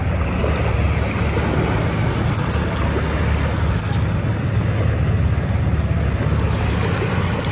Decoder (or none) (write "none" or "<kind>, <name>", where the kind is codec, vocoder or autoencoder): none